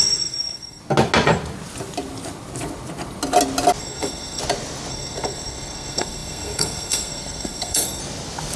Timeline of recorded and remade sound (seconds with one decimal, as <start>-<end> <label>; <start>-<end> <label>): 0.0-0.8 remade; 0.8-3.8 recorded; 3.8-4.4 remade; 4.4-4.9 recorded; 4.9-8.0 remade; 8.0-8.6 recorded